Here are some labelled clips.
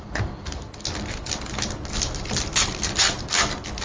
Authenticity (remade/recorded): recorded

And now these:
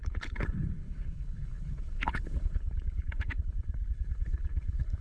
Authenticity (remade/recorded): remade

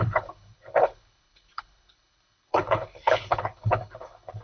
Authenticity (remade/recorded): remade